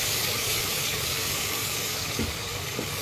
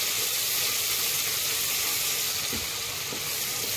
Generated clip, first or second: first